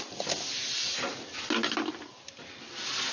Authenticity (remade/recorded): recorded